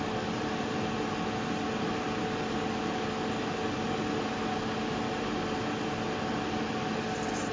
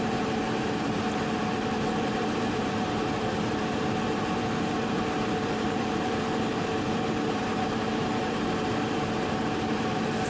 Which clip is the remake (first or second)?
second